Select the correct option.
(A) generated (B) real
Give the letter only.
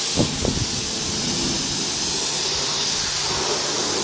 B